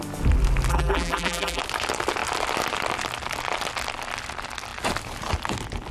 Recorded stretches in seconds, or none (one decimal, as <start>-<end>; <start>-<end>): 0.0-0.7; 1.6-5.9